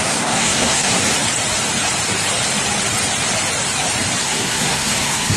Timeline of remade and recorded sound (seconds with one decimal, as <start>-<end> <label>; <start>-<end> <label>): 0.0-1.0 remade; 1.0-4.2 recorded; 4.2-5.4 remade